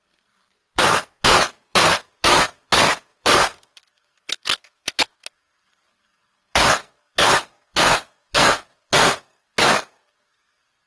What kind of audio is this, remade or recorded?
remade